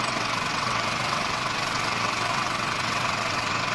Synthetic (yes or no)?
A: yes